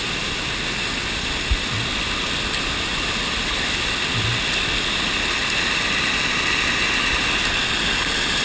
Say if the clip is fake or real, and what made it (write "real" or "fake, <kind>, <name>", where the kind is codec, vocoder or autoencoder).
real